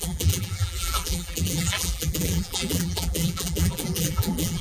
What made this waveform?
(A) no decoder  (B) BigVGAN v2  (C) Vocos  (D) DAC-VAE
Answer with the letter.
B